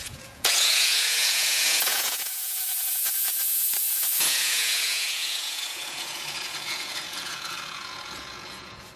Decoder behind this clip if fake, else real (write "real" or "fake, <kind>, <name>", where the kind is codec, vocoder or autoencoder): fake, vocoder, Vocos